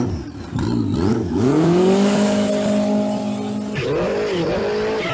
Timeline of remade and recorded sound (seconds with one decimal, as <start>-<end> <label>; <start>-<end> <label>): 0.0-1.1 recorded; 1.1-2.5 remade; 2.5-5.1 recorded